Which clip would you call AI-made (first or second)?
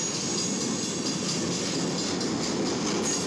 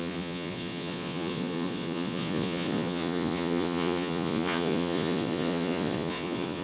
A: second